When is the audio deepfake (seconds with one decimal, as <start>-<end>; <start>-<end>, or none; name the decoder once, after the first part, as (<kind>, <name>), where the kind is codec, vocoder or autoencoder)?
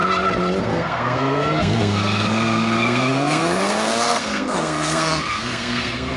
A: 0.6-6.2 (codec, SNAC)